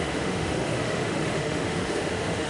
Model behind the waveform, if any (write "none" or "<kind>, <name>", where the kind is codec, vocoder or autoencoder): autoencoder, DAC-VAE